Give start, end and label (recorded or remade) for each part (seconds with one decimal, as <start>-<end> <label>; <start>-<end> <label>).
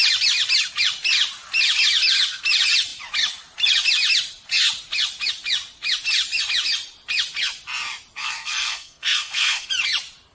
0.0-8.2 recorded; 8.2-9.7 remade; 9.7-10.3 recorded